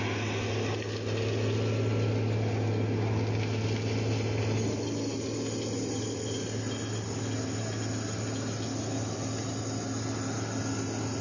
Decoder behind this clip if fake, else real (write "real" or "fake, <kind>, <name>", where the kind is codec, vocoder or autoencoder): real